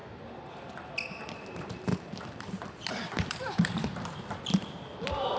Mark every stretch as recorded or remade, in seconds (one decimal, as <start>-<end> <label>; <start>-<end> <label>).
0.0-1.5 recorded; 1.5-5.4 remade